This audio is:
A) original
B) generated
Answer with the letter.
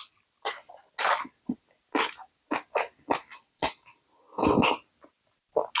A